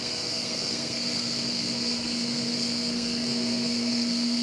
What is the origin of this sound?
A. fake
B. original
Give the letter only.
A